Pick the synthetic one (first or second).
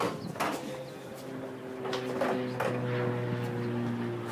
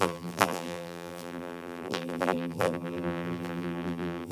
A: second